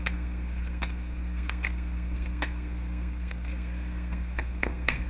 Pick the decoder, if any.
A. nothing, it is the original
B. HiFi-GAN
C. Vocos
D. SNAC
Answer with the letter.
D